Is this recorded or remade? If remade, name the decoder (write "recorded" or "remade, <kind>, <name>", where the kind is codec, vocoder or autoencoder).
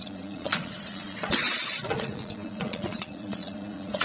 remade, vocoder, Vocos